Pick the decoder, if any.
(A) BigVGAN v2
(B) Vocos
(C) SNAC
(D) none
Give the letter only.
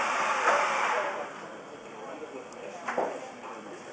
A